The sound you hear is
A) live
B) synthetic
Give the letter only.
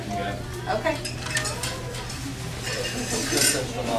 A